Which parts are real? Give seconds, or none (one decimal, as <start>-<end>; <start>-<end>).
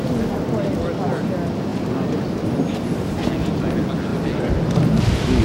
0.0-5.4